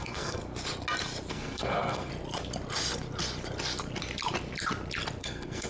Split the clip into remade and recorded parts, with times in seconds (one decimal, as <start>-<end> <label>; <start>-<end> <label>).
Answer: 0.0-0.4 remade; 0.4-1.3 recorded; 1.3-2.1 remade; 2.1-5.2 recorded; 5.2-5.7 remade

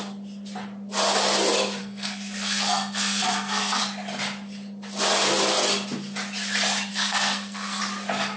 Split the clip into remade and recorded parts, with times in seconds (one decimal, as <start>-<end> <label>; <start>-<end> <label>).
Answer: 0.0-1.8 recorded; 1.8-3.8 remade; 3.8-6.9 recorded; 6.9-7.8 remade; 7.8-8.4 recorded

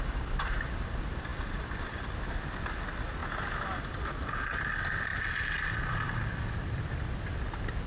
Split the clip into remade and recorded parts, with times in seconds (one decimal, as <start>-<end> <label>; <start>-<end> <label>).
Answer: 0.0-7.9 recorded

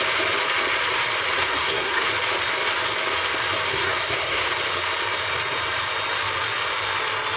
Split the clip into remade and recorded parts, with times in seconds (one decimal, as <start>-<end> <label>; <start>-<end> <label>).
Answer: 0.0-1.4 recorded; 1.4-2.1 remade; 2.1-3.7 recorded; 3.7-4.5 remade; 4.5-7.4 recorded

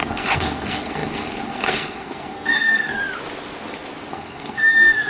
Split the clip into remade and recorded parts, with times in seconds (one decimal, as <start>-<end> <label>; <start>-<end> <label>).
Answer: 0.0-3.0 remade; 3.0-4.1 recorded; 4.1-5.1 remade

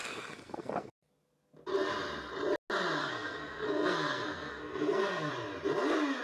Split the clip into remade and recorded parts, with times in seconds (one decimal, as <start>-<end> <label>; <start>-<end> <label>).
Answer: 0.0-1.1 remade; 1.1-3.0 recorded; 3.0-5.3 remade; 5.3-6.2 recorded